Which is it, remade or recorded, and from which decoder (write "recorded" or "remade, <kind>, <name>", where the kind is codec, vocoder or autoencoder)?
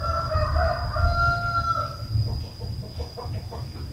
recorded